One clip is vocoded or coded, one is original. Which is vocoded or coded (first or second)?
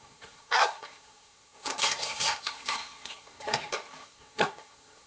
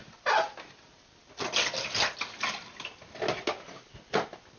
first